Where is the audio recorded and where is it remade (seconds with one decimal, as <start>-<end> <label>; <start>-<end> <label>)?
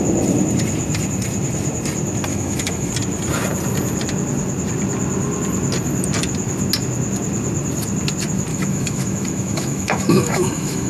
0.0-2.3 recorded; 2.3-2.9 remade; 2.9-8.5 recorded; 8.5-10.9 remade